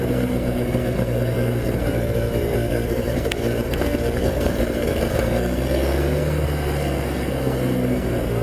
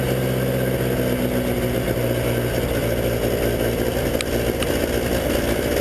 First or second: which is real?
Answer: second